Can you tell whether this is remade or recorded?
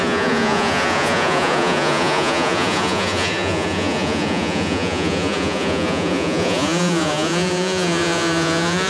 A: remade